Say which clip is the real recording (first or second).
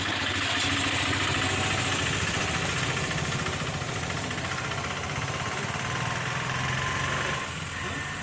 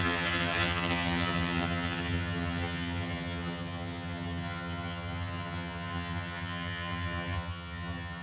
first